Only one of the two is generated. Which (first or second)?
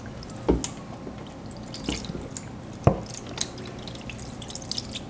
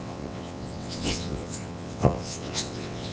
second